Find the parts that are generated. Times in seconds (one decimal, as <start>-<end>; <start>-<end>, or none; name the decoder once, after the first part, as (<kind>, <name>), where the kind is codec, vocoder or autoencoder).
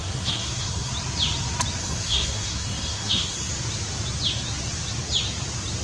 0.0-0.9 (codec, SNAC); 1.8-3.5